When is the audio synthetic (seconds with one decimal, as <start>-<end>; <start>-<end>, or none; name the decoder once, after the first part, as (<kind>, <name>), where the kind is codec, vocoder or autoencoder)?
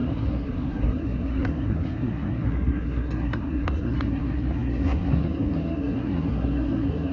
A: 0.0-7.1 (codec, SNAC)